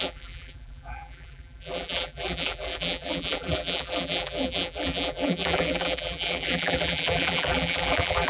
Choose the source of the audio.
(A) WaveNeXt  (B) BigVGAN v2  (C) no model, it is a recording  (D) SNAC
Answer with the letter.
B